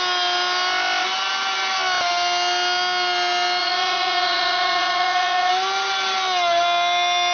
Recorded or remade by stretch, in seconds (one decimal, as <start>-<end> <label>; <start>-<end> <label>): 0.0-3.6 recorded; 3.6-5.5 remade; 5.5-7.3 recorded